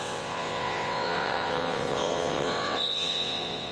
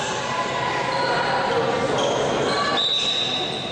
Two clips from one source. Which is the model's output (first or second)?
first